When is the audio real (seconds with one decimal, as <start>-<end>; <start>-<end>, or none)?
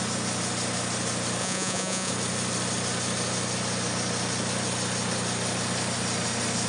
0.0-1.4; 2.1-6.7